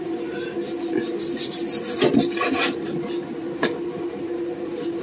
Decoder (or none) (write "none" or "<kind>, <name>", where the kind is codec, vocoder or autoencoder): none